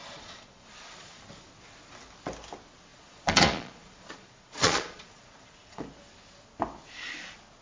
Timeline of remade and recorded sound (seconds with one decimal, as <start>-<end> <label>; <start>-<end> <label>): 0.0-1.2 remade; 1.2-2.9 recorded; 2.9-5.8 remade; 5.8-7.6 recorded